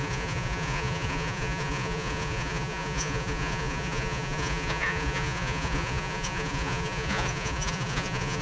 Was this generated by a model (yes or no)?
yes